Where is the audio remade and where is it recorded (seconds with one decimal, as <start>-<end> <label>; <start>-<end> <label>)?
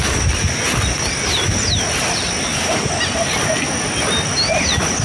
0.0-5.0 recorded